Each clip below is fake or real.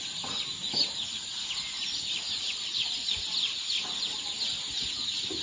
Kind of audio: real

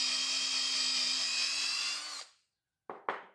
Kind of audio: real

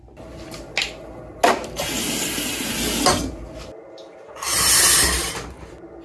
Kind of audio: real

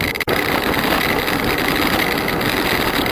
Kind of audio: real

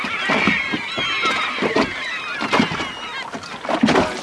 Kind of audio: real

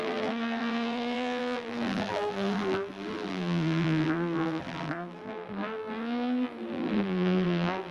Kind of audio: fake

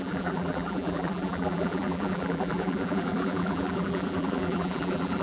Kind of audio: fake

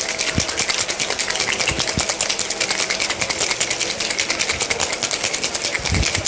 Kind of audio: real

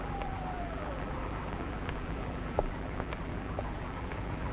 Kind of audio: fake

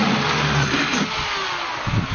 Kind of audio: real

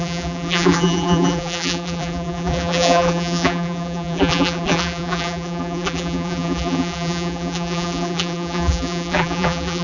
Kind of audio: fake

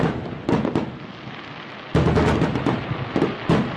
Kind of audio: real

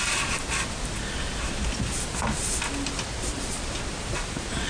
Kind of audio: real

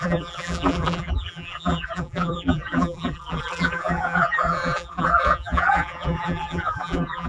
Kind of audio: fake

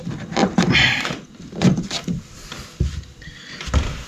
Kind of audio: fake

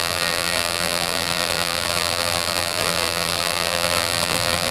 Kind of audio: fake